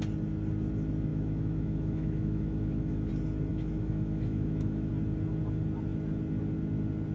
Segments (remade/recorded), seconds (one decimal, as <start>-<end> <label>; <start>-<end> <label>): 0.0-1.1 recorded; 1.1-3.1 remade; 3.1-3.5 recorded; 3.5-4.9 remade; 4.9-7.1 recorded